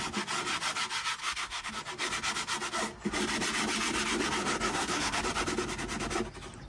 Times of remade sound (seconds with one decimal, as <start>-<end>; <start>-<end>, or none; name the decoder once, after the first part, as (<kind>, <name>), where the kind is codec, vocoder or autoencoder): 1.2-1.7 (codec, SNAC); 4.7-5.2

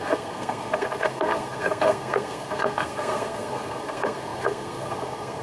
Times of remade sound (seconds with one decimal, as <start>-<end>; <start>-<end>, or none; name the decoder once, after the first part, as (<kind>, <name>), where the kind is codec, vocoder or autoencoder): 0.0-5.4 (codec, SNAC)